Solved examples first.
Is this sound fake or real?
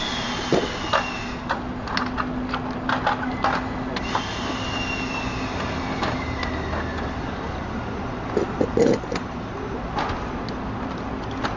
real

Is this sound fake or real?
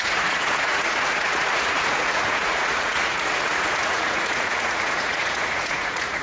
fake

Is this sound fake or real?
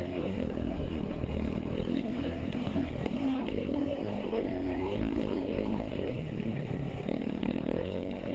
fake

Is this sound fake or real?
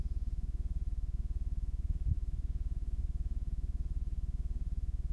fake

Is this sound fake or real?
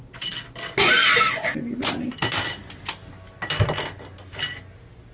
real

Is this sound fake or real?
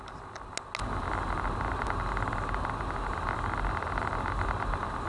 real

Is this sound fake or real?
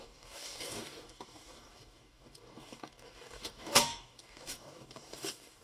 fake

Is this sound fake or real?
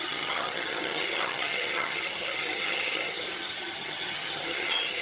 fake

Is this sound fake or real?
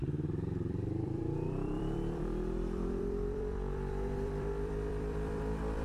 fake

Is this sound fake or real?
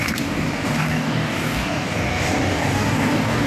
fake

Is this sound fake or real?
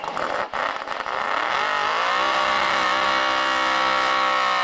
real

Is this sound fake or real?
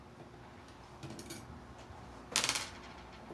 real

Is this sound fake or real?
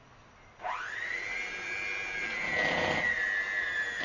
real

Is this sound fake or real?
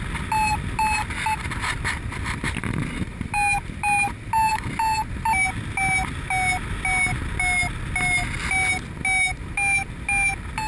real